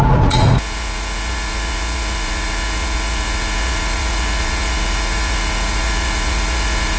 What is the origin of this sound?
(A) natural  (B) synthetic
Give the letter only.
B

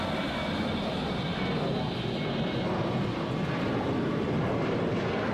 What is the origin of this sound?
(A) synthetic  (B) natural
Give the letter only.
A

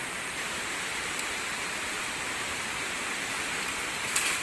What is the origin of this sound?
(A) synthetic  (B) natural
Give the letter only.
A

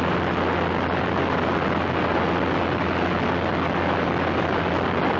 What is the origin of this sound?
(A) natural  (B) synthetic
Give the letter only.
A